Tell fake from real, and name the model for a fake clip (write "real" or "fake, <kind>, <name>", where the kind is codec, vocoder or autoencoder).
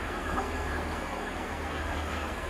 fake, codec, SNAC